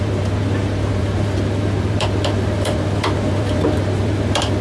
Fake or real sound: fake